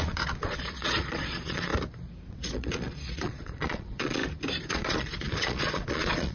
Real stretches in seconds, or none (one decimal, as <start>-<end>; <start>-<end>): 1.7-2.3; 4.2-4.7